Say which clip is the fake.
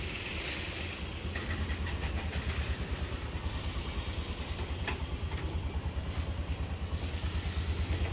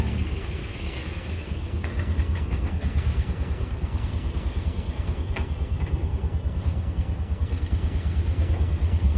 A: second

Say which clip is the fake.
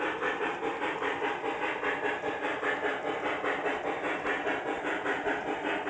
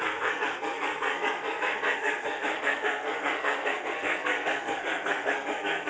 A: second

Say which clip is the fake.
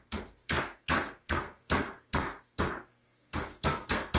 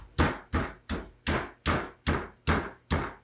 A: first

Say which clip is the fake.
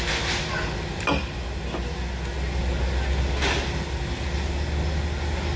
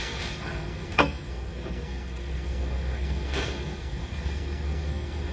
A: second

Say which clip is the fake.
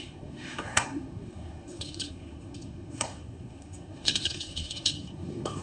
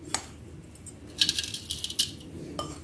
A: first